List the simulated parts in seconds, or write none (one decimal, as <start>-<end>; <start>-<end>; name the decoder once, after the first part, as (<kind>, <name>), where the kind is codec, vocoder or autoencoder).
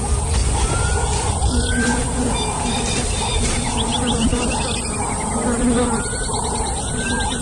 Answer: 0.4-2.3 (vocoder, Vocos)